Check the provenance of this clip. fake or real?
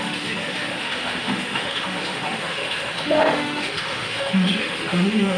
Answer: fake